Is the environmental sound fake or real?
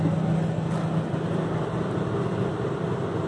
real